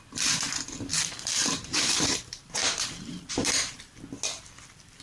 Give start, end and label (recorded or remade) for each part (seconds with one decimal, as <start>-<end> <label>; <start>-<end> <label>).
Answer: 0.0-0.9 recorded; 0.9-3.9 remade; 3.9-5.0 recorded